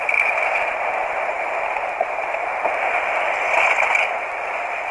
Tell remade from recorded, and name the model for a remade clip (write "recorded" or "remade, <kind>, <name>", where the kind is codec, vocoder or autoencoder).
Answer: recorded